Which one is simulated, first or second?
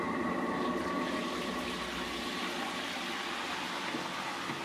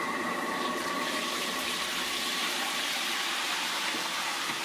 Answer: second